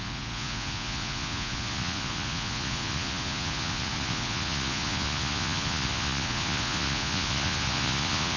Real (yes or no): no